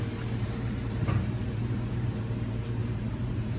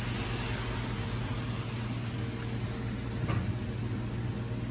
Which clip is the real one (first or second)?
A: second